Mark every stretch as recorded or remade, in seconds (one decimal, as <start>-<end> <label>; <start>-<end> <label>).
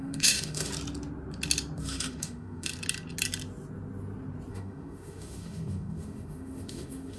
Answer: 0.0-0.7 remade; 0.7-1.8 recorded; 1.8-2.7 remade; 2.7-4.5 recorded; 4.5-7.2 remade